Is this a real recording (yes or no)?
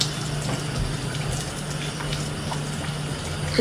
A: yes